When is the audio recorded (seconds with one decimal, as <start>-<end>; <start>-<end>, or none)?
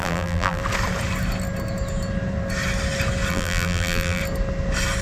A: 0.6-3.3; 4.2-5.0